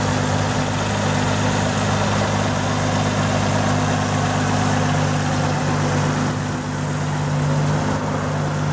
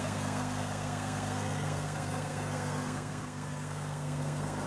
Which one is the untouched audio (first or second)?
first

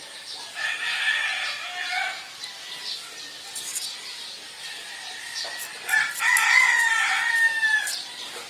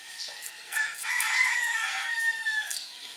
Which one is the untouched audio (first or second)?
first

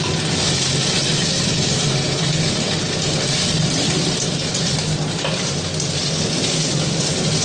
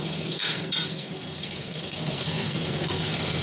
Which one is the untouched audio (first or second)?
first